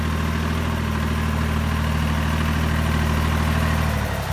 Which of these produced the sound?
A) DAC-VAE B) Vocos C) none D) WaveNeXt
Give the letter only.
C